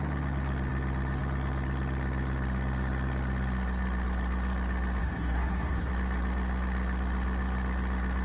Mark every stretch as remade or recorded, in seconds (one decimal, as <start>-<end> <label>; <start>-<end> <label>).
0.0-5.0 recorded; 5.0-5.9 remade; 5.9-8.2 recorded